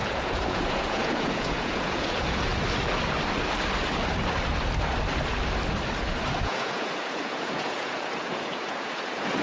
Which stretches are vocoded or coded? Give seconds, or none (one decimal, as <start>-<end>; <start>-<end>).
0.0-2.5; 6.4-9.4